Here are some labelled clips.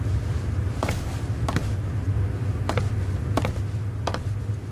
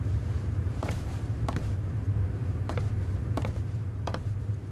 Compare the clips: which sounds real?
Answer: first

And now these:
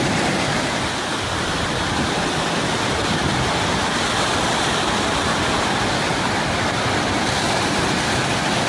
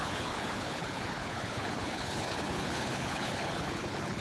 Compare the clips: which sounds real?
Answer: first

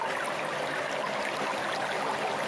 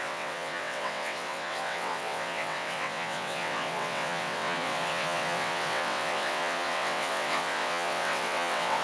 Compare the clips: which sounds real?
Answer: first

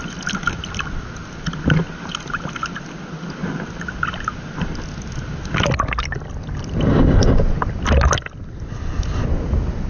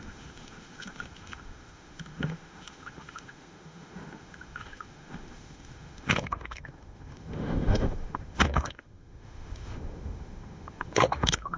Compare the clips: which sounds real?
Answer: first